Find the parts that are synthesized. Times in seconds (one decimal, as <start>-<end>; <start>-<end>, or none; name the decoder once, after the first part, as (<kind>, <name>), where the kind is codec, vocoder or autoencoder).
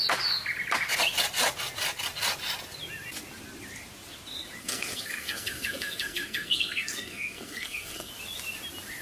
4.6-8.1 (codec, SNAC)